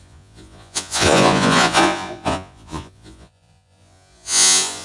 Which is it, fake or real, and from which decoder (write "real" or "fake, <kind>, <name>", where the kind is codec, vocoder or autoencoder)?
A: fake, vocoder, Vocos